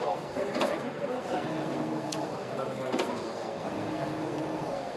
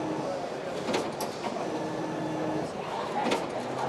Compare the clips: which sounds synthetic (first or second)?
first